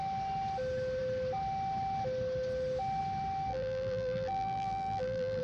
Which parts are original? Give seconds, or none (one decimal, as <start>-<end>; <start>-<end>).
0.0-3.5